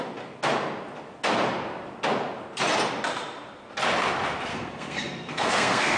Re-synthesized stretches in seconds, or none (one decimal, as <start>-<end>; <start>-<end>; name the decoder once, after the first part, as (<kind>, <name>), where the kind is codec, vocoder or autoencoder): 4.5-6.0 (codec, SNAC)